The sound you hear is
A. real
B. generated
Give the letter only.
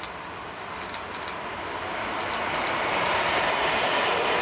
A